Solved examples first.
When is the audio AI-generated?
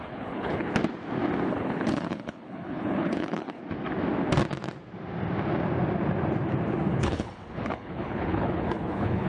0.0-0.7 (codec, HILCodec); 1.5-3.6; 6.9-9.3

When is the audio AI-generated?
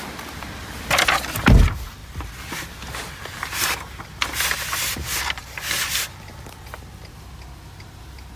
none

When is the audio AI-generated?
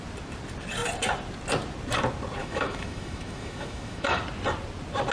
2.4-4.2 (autoencoder, DAC-VAE)